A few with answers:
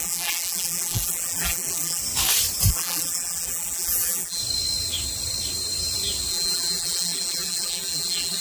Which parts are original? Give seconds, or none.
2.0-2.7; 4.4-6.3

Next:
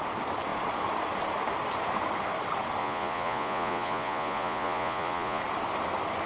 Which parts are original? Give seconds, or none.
0.0-2.8; 5.4-6.3

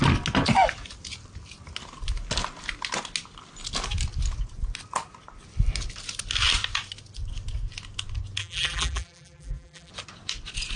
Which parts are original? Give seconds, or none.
0.0-8.4; 9.9-10.8

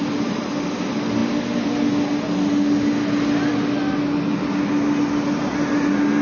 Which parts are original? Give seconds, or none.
0.0-6.2

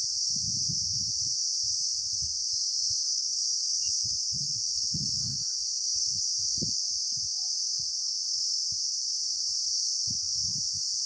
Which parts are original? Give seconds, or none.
0.0-3.0; 6.8-11.1

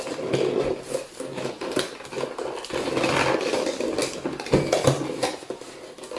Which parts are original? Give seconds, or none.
0.0-6.2

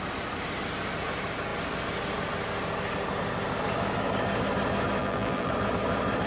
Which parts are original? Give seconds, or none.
0.0-5.0; 5.5-6.3